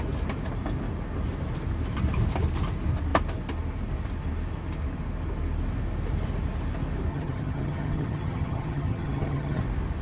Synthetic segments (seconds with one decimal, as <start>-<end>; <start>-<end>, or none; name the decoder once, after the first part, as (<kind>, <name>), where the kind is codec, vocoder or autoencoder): 7.1-9.6 (vocoder, HiFi-GAN)

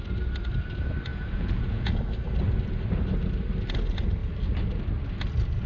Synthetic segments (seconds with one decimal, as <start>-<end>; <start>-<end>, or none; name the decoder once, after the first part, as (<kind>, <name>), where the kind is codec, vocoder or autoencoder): 1.1-2.0 (vocoder, Vocos)

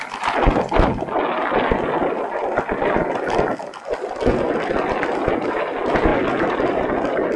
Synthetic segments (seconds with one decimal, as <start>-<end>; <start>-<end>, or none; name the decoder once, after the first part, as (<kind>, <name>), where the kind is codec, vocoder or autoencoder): none